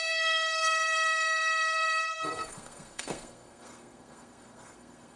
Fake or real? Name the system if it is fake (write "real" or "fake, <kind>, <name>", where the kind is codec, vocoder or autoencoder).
fake, codec, SNAC